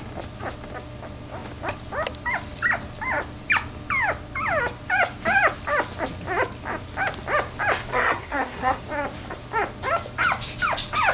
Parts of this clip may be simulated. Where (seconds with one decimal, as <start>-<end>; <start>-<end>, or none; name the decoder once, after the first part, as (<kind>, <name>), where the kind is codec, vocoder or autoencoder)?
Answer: 7.9-8.8 (codec, SNAC)

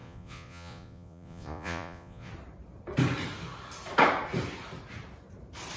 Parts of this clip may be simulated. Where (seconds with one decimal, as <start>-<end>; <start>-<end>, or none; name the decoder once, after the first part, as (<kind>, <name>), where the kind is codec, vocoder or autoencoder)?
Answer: 0.0-2.3 (vocoder, Vocos)